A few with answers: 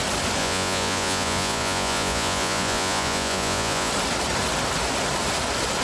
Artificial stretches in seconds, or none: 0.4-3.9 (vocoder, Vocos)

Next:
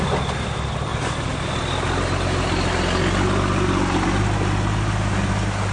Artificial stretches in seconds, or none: none

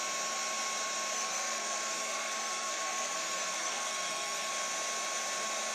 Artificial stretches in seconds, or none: 1.1-4.5 (codec, SNAC)

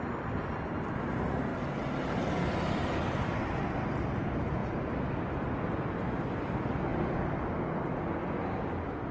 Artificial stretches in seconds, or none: none

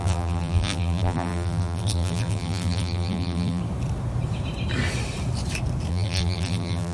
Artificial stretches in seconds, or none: 0.0-3.6 (vocoder, BigVGAN v2); 5.9-6.9

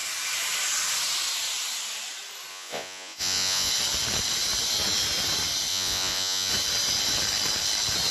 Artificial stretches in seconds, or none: 2.5-3.7 (vocoder, Vocos); 5.7-6.5

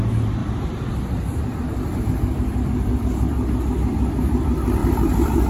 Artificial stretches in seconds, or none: 0.4-2.0 (vocoder, BigVGAN v2); 4.8-5.5